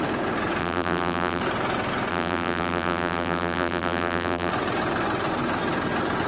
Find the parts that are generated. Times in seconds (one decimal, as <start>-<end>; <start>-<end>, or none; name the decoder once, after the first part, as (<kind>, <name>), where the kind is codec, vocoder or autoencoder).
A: 0.6-1.4 (vocoder, BigVGAN v2); 2.1-4.5